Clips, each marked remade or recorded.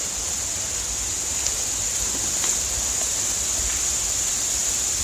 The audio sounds recorded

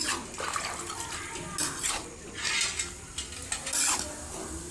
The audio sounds recorded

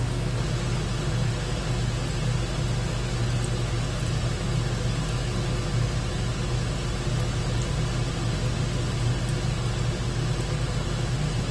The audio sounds recorded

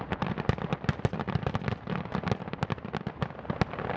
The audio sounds recorded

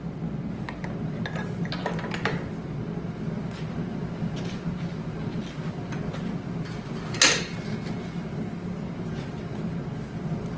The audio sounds recorded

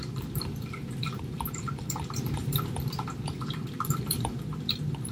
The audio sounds remade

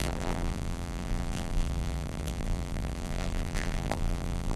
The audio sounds remade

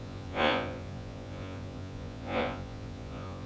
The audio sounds remade